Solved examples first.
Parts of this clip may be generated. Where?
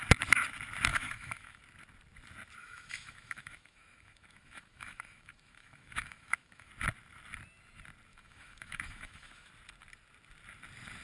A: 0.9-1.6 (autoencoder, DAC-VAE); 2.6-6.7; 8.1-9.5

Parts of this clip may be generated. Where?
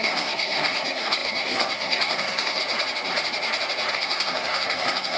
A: 0.0-2.6 (codec, SNAC); 3.9-5.2